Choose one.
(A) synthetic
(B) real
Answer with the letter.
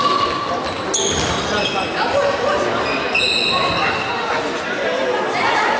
B